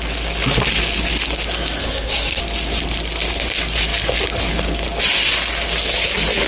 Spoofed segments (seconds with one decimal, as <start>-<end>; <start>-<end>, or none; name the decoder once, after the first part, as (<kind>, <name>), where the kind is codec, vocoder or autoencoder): 1.8-2.4 (codec, SNAC)